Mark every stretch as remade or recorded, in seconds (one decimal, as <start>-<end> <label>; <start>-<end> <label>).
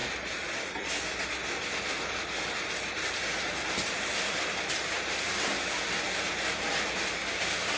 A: 0.0-3.3 recorded; 3.3-7.8 remade